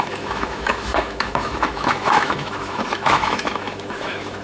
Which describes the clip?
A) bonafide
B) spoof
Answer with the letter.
B